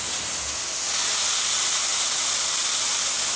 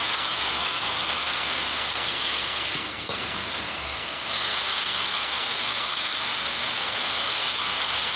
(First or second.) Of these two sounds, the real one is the first